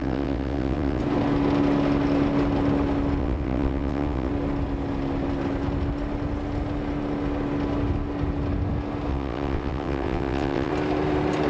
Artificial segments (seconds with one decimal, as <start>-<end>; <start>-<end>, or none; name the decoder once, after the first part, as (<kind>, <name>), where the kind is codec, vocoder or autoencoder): 0.0-1.0 (vocoder, WaveNeXt); 3.2-4.3; 9.1-10.7